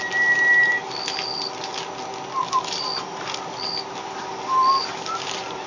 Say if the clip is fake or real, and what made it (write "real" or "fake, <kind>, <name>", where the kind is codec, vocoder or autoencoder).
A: real